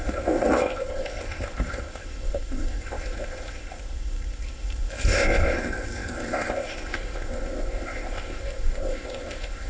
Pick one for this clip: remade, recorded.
remade